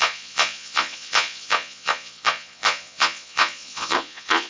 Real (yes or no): no